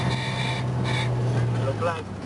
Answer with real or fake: real